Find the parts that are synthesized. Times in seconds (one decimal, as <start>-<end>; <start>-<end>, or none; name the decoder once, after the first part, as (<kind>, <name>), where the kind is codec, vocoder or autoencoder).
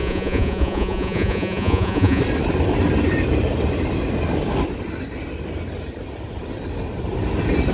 0.0-2.2 (vocoder, Vocos)